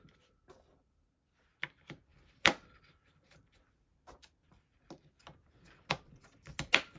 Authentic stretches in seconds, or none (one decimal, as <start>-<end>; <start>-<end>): 0.0-7.0